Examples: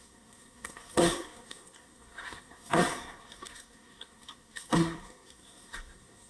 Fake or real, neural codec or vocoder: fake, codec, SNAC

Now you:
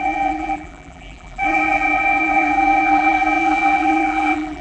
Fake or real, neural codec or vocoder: fake, vocoder, BigVGAN v2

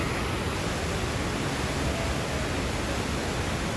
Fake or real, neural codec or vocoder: real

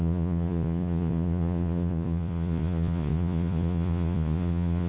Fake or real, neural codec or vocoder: fake, vocoder, Vocos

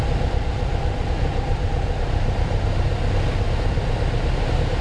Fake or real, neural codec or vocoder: real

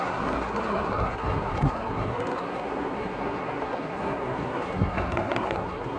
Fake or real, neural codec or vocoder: fake, codec, SNAC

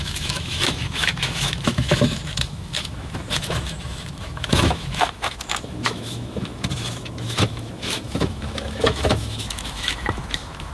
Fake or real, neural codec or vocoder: fake, autoencoder, DAC-VAE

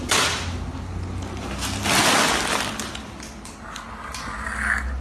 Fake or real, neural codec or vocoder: real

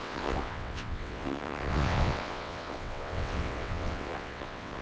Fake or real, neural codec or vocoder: fake, vocoder, WaveNeXt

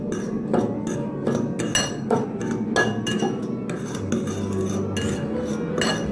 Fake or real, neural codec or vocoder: real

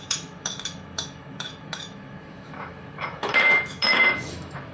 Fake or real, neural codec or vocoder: fake, autoencoder, DAC-VAE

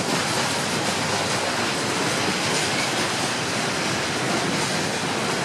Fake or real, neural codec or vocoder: real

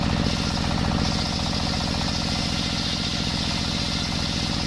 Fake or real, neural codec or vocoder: real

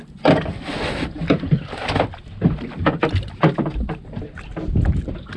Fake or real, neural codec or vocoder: real